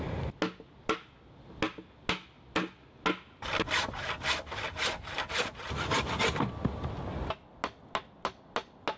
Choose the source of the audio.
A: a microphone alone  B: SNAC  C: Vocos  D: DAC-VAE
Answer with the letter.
A